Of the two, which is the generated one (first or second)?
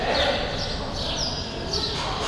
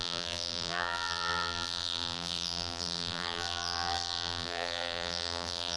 second